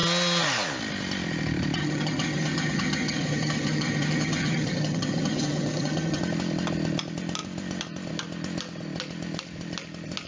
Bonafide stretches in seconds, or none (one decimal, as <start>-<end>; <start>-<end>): 0.0-1.8; 6.2-10.3